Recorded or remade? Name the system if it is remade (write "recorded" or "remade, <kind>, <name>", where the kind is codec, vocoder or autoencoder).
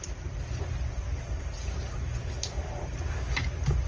recorded